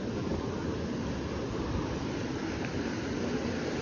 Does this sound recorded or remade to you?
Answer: recorded